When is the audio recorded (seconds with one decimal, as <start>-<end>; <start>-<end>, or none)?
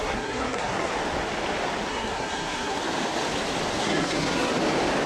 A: 0.9-1.9; 2.8-3.8; 4.5-5.1